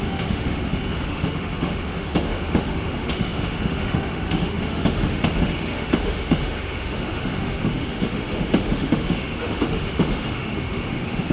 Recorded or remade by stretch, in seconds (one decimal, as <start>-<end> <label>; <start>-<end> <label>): 0.0-11.3 remade